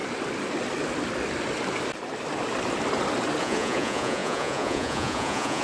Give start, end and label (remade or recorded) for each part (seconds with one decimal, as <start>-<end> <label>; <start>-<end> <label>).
0.0-3.4 recorded; 3.4-5.6 remade